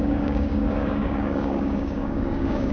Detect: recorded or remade remade